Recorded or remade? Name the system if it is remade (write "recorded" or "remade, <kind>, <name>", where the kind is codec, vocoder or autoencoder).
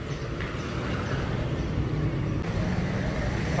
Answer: recorded